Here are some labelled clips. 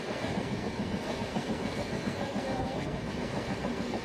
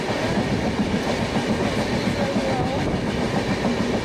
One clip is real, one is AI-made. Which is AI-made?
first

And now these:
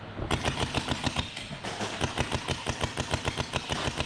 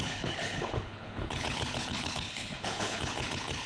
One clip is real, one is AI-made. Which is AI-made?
second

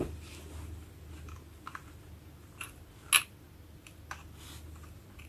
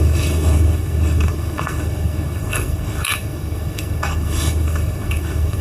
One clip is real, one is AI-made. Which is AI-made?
second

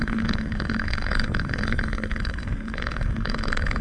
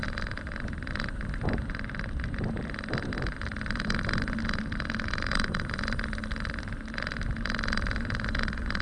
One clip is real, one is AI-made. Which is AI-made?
first